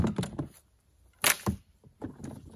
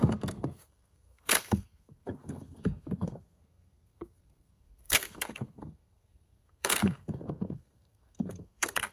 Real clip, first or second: first